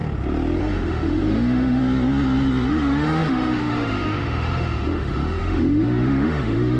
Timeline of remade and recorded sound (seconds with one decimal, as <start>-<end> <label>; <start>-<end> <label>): 0.0-0.6 recorded; 0.6-1.8 remade; 1.8-2.7 recorded; 2.7-6.8 remade